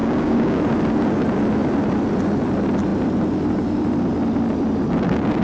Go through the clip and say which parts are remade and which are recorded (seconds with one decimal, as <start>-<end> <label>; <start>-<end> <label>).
0.0-0.6 remade; 0.6-5.4 recorded